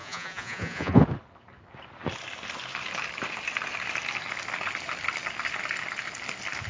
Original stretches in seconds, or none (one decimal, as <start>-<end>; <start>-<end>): 1.0-6.7